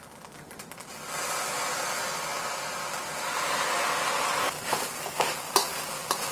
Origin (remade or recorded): recorded